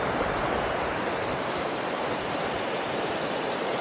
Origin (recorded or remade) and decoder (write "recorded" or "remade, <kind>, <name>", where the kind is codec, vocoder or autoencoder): remade, vocoder, BigVGAN v2